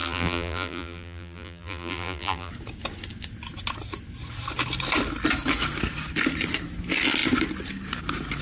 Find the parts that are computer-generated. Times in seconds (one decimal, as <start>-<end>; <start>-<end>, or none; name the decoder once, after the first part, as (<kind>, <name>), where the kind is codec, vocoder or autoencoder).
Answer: 0.0-2.5 (vocoder, BigVGAN v2)